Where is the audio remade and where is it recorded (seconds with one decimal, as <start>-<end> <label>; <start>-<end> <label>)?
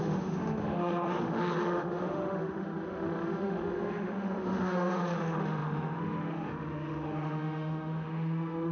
0.0-8.7 remade